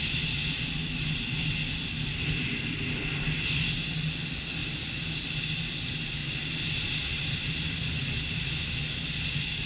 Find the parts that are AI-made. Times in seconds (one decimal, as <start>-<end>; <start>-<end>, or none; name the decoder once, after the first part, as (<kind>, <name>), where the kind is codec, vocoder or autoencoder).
none